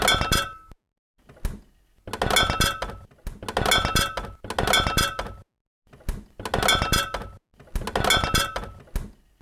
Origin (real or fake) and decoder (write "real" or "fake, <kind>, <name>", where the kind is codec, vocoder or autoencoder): real